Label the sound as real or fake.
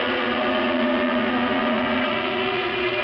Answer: fake